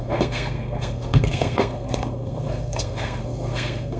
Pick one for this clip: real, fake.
fake